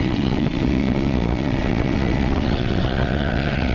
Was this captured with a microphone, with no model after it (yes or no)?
no